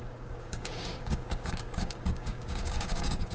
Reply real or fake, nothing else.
fake